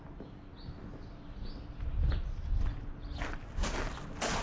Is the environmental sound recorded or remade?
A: recorded